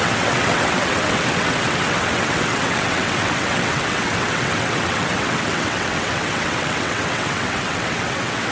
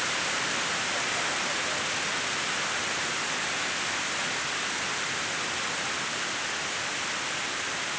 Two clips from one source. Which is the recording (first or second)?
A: second